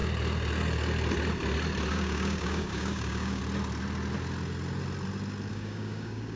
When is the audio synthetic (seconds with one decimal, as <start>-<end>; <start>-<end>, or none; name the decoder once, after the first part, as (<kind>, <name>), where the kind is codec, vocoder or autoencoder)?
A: 1.9-3.4 (codec, DAC); 5.5-6.4